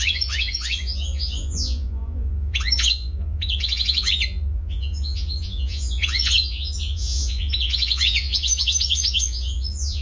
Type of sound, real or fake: fake